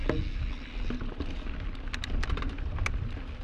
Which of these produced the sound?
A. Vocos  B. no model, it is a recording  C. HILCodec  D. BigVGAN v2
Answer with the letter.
B